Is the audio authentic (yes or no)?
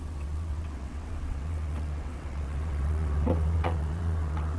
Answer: no